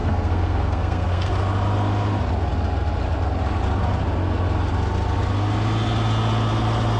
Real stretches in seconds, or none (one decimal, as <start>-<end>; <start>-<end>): 1.3-7.0